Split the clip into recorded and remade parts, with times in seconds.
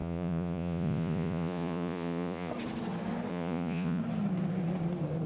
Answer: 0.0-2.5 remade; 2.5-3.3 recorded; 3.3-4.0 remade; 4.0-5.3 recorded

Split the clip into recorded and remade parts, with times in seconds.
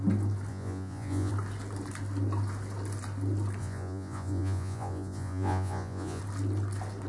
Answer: 0.0-0.5 recorded; 0.5-1.3 remade; 1.3-3.6 recorded; 3.6-6.2 remade; 6.2-7.1 recorded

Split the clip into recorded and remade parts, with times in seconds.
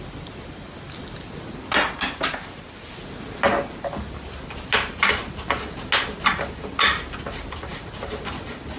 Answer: 0.0-8.8 recorded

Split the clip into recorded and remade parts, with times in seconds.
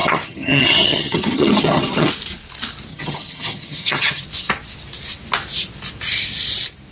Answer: 0.0-2.1 remade; 2.1-2.9 recorded; 2.9-4.2 remade; 4.2-6.9 recorded